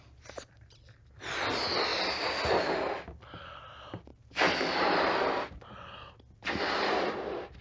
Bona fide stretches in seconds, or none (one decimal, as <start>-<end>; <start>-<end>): 0.0-7.6